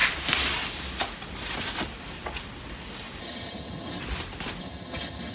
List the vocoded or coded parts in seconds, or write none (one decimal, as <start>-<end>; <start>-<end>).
3.2-4.0; 4.6-5.3